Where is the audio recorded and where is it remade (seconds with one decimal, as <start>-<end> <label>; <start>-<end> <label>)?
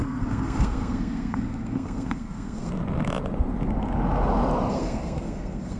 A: 0.0-2.7 remade; 2.7-4.7 recorded; 4.7-5.8 remade